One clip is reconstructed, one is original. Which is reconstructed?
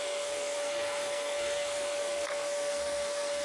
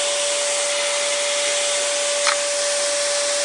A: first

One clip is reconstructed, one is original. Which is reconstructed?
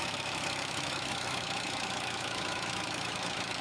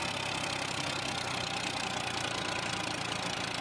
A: first